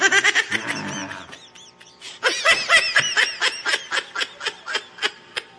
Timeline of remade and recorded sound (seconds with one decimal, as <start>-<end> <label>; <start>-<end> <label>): 0.0-5.6 recorded